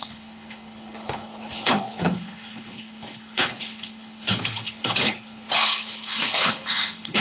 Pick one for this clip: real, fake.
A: fake